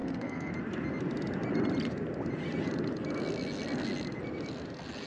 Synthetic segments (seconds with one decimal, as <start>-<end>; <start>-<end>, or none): 0.0-0.5